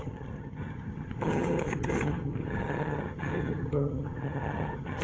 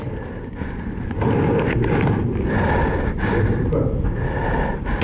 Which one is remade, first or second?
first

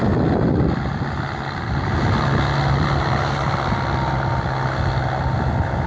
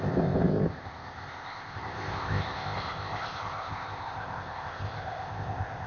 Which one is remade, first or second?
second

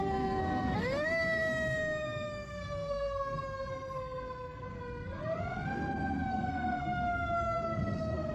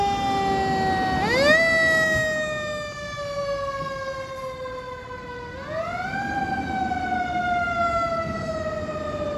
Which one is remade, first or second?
first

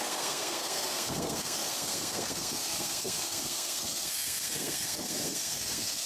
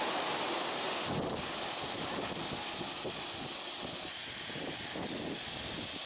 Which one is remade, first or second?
first